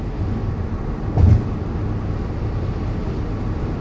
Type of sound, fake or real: real